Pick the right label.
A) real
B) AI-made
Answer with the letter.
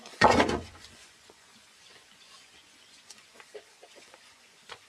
B